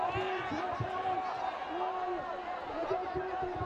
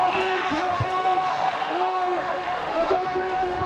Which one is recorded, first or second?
first